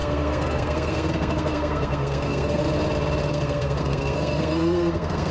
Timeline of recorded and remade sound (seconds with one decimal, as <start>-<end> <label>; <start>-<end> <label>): 0.0-2.6 remade; 2.6-3.3 recorded; 3.3-5.3 remade